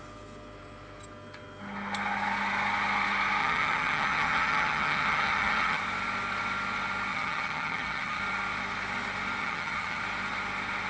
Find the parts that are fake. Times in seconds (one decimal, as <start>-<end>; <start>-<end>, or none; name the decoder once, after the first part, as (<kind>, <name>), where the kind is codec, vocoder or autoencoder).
3.4-5.8 (vocoder, HiFi-GAN); 7.1-8.2; 9.4-10.0